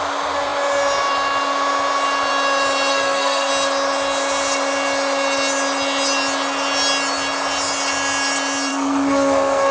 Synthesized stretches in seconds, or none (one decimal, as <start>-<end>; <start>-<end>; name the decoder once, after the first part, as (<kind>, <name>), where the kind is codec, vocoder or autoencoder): 2.9-3.5 (codec, SNAC); 8.7-9.7